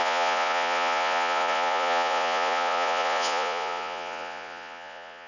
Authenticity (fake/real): fake